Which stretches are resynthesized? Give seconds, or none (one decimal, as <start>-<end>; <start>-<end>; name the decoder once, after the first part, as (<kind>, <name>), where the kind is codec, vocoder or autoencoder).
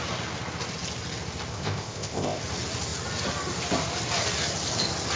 1.5-2.4 (codec, ZipCodec)